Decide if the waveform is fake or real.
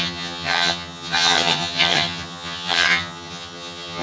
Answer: fake